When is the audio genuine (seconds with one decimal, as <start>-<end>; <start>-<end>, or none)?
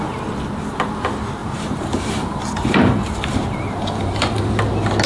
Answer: 0.0-1.4; 4.5-5.1